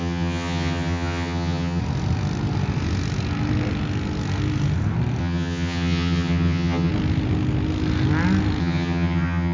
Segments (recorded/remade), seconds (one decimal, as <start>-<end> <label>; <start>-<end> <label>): 0.0-1.8 remade; 1.8-5.2 recorded; 5.2-6.9 remade; 6.9-8.6 recorded; 8.6-9.5 remade